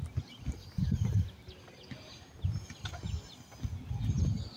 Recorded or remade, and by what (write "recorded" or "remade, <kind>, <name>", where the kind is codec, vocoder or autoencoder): recorded